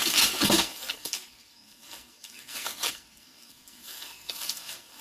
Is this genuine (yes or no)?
no